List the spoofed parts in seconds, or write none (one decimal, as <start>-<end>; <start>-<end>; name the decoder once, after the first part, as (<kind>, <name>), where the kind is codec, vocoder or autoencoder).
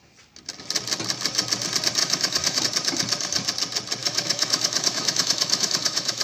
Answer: 2.0-2.6 (autoencoder, DAC-VAE); 4.0-6.2